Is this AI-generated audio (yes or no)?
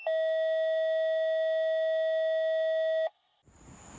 no